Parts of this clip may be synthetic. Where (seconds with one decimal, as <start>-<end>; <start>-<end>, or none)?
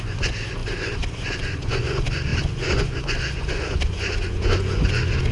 0.0-5.3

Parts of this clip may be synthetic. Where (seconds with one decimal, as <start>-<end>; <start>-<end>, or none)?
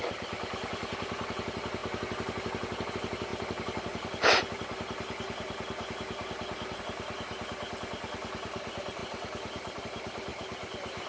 none